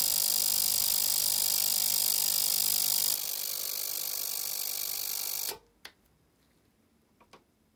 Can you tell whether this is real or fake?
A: real